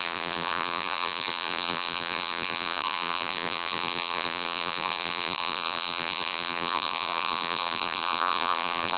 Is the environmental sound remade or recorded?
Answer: remade